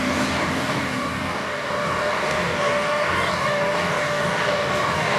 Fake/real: fake